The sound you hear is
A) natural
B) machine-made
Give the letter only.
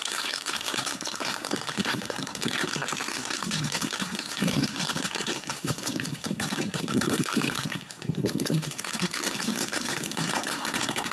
B